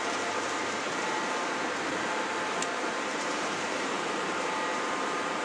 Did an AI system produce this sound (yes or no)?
yes